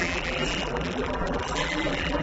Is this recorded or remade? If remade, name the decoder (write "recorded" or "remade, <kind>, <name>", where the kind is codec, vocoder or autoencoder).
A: remade, vocoder, BigVGAN v2